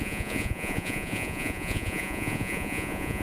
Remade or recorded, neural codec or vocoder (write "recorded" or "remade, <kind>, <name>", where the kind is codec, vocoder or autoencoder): remade, vocoder, Vocos